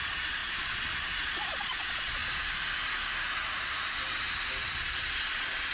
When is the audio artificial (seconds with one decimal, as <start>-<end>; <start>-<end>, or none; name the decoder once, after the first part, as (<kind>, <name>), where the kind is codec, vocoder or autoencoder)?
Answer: 0.0-2.2 (vocoder, Vocos); 4.6-5.7